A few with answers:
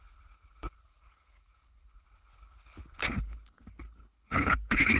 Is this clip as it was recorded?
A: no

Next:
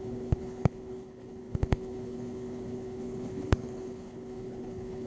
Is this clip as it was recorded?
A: no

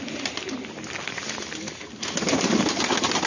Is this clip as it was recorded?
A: yes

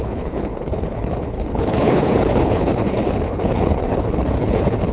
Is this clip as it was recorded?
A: no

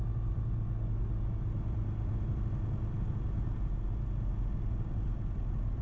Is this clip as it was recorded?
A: yes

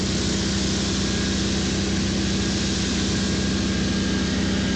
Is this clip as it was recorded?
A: yes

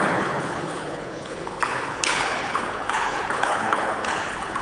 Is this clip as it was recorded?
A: no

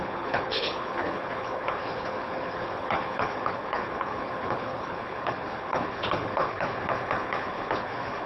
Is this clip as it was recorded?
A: no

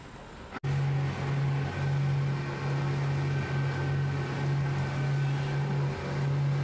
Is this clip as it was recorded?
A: yes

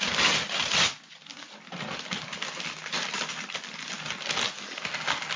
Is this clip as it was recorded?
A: yes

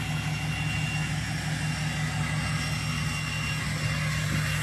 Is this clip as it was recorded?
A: yes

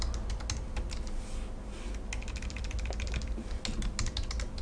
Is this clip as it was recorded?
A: yes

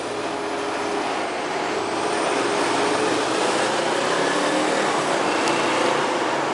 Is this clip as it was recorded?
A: yes